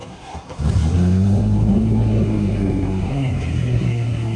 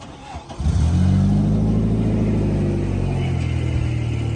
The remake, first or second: first